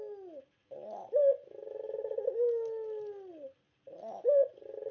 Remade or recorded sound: recorded